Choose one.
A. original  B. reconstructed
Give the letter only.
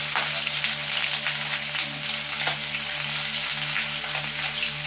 A